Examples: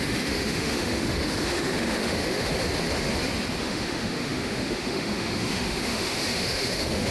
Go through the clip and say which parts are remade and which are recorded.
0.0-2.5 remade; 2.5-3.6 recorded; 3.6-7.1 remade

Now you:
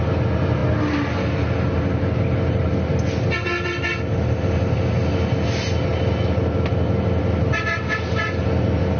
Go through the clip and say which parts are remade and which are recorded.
0.0-9.0 recorded

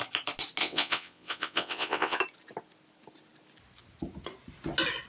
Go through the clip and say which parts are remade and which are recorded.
0.0-0.6 recorded; 0.6-2.2 remade; 2.2-5.1 recorded